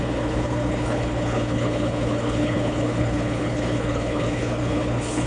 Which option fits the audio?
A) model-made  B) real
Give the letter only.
A